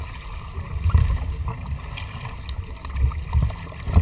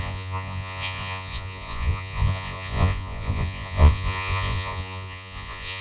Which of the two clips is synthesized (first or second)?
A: second